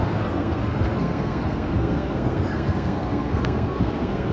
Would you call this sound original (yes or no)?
no